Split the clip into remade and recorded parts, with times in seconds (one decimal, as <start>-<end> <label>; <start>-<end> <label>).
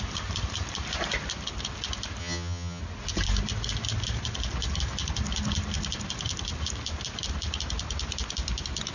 0.0-2.2 recorded; 2.2-2.8 remade; 2.8-8.9 recorded